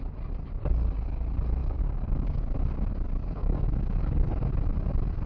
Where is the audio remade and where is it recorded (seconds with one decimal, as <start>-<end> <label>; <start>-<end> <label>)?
0.0-1.6 recorded; 1.6-2.5 remade; 2.5-3.2 recorded; 3.2-4.3 remade; 4.3-5.3 recorded